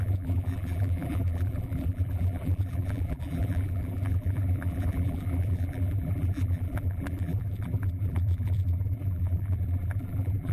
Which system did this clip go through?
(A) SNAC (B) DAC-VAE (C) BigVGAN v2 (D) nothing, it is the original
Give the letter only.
C